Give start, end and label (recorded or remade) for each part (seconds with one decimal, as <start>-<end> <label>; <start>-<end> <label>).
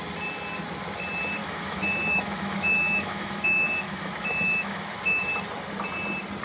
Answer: 0.0-1.4 recorded; 1.4-5.2 remade; 5.2-6.4 recorded